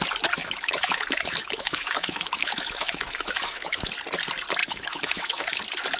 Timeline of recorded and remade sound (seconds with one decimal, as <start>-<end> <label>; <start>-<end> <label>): 0.0-0.4 recorded; 0.4-3.9 remade; 3.9-4.6 recorded; 4.6-5.6 remade; 5.6-6.0 recorded